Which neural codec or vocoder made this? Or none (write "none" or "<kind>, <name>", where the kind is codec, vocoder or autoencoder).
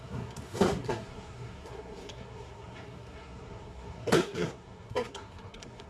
codec, SNAC